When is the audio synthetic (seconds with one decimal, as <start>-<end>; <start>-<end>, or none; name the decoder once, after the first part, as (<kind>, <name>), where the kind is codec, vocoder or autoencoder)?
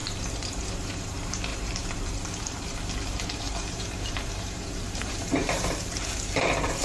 0.0-6.8 (vocoder, BigVGAN v2)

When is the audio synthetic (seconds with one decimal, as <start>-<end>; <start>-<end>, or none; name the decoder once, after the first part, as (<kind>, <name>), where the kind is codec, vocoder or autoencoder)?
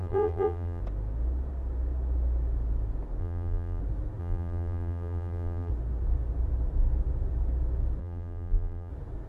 0.0-0.8 (vocoder, BigVGAN v2); 3.2-3.8; 4.2-5.7; 8.0-8.9